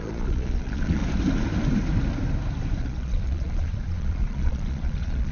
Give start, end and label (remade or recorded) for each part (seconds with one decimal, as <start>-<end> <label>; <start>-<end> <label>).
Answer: 0.0-1.0 remade; 1.0-2.8 recorded; 2.8-5.3 remade